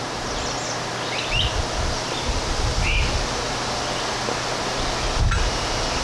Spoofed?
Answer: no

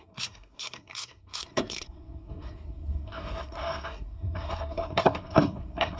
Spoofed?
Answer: yes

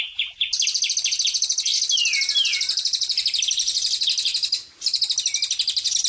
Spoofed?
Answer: no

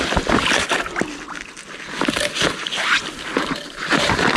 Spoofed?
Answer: no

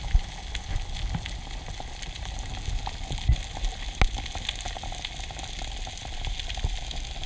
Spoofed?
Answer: no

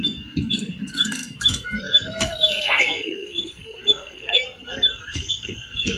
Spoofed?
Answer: yes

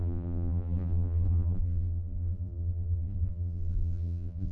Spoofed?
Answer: yes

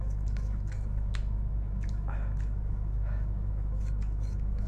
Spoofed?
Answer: yes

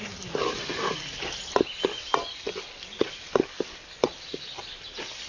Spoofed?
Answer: no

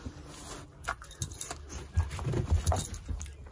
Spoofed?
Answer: no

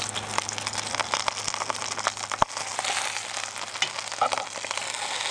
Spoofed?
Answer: no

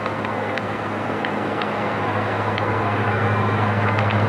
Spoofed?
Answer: yes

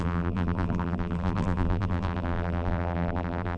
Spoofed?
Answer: yes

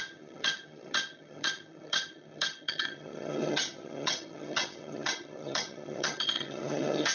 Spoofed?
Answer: yes